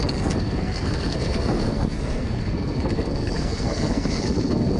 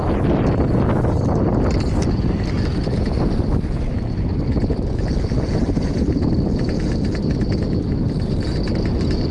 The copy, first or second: first